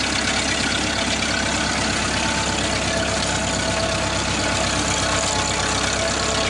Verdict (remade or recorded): recorded